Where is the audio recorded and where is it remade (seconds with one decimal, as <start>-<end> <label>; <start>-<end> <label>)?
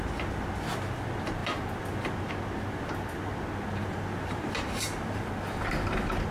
0.0-3.8 recorded; 3.8-5.2 remade; 5.2-6.3 recorded